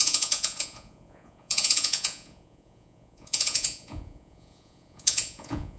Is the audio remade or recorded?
remade